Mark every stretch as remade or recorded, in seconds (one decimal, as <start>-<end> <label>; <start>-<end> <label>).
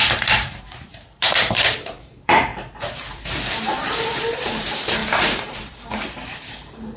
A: 0.0-7.0 remade